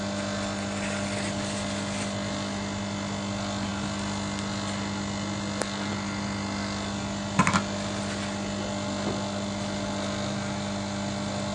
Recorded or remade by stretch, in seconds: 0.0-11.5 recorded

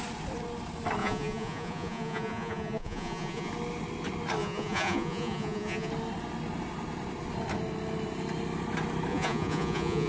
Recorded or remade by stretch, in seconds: 0.0-1.0 recorded; 1.0-3.5 remade; 3.5-4.4 recorded; 4.4-5.9 remade; 5.9-9.1 recorded; 9.1-10.1 remade

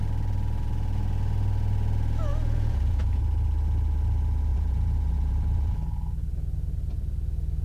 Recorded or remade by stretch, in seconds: 0.0-2.3 recorded; 2.3-3.2 remade; 3.2-4.5 recorded; 4.5-5.7 remade; 5.7-7.6 recorded